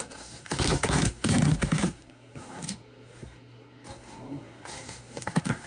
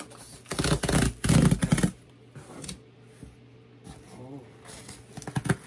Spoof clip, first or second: first